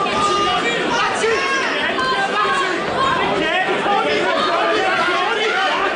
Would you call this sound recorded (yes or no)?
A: yes